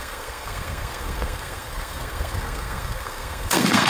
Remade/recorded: remade